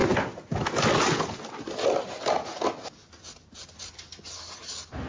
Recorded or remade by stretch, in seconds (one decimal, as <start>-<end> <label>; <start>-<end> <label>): 0.0-5.1 recorded

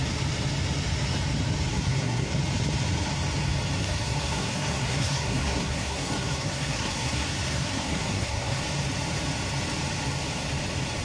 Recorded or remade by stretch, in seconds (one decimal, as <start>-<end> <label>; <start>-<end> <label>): 0.0-1.7 recorded; 1.7-2.3 remade; 2.3-3.8 recorded; 3.8-8.6 remade; 8.6-11.0 recorded

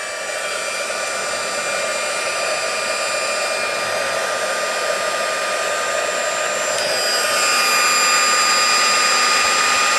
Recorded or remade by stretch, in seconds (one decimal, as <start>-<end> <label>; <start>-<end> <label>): 0.0-10.0 recorded